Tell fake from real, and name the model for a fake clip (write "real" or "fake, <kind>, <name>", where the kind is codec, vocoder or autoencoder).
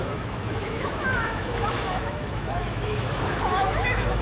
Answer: fake, autoencoder, DAC-VAE